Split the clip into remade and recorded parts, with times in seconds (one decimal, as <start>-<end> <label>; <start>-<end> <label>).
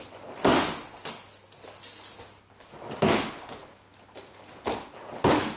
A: 0.0-5.6 recorded